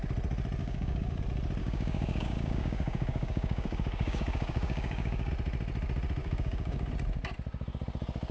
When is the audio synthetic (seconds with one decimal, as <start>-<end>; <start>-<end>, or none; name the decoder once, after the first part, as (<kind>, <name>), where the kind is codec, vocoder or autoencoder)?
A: 0.6-1.2 (codec, DAC); 1.6-5.3; 6.2-6.9